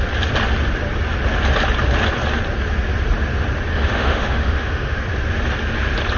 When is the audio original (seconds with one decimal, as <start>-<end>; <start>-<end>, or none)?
0.0-3.7; 5.0-6.2